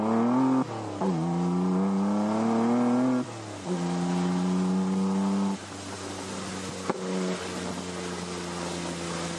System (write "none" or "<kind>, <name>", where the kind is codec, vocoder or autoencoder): none